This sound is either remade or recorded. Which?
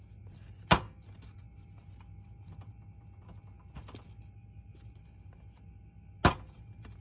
recorded